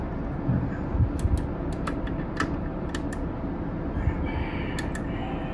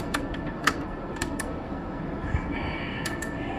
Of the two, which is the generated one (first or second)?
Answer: second